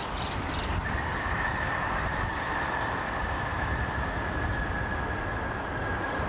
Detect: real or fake real